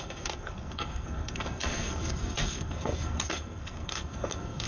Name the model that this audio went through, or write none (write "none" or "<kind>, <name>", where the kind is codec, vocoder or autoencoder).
codec, SNAC